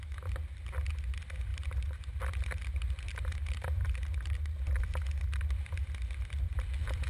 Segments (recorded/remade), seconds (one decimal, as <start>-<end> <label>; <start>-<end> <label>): 0.0-7.1 recorded